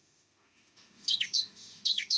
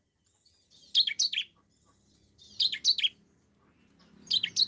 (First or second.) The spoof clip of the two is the first